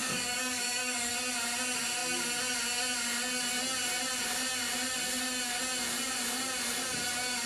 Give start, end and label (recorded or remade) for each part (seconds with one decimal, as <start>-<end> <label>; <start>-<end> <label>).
0.0-1.1 remade; 1.1-7.5 recorded